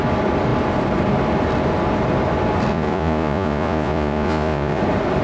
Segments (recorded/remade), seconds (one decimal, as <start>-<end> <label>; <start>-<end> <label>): 0.0-2.7 recorded; 2.7-4.8 remade; 4.8-5.2 recorded